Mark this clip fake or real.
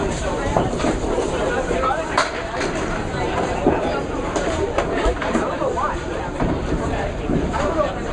fake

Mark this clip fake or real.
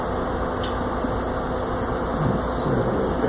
real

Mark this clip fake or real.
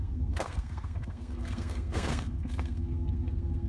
fake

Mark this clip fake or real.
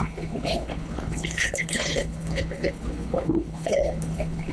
fake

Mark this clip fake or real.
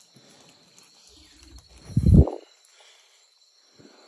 real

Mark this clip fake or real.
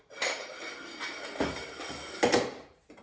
real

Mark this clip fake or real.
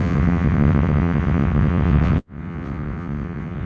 fake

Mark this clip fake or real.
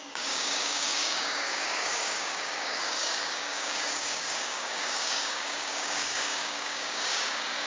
fake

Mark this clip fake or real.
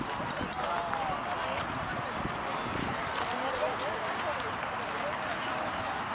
real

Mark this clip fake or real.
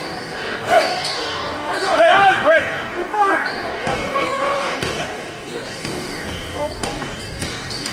fake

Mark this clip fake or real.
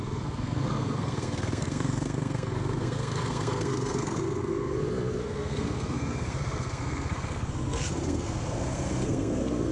fake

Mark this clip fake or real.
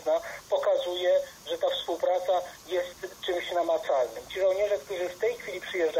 real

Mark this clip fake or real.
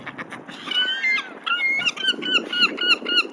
real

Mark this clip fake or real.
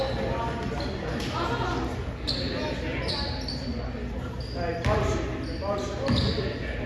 real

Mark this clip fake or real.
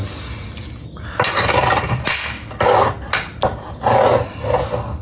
real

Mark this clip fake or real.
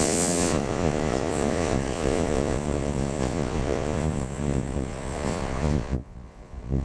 fake